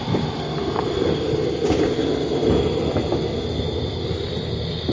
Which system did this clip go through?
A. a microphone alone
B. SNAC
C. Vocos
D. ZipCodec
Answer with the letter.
A